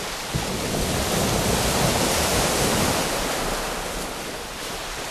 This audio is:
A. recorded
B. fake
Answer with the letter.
A